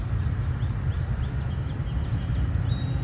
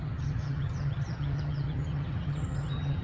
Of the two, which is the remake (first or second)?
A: second